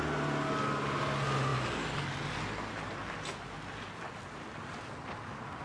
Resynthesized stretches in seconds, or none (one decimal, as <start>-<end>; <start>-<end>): none